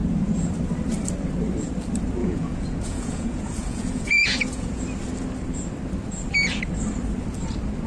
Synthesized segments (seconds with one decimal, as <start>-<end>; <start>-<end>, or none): 2.2-4.8